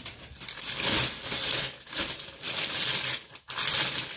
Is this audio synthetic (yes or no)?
no